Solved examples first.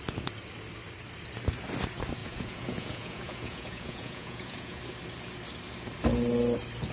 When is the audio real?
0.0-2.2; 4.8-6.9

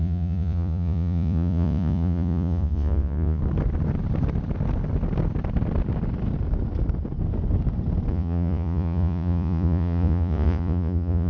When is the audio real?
3.4-8.1

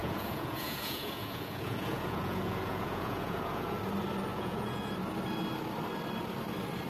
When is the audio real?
3.8-4.3; 4.9-6.9